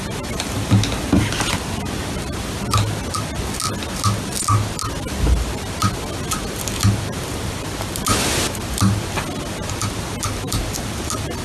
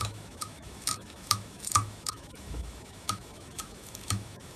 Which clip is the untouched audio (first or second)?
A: first